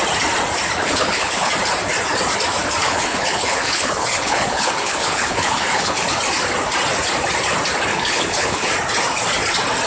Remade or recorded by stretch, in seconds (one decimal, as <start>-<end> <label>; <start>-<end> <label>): 0.0-0.8 recorded; 0.8-1.5 remade; 1.5-2.8 recorded; 2.8-6.2 remade; 6.2-7.9 recorded; 7.9-8.7 remade; 8.7-9.9 recorded